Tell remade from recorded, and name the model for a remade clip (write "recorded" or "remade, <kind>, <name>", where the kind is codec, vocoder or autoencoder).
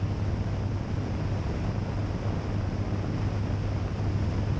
recorded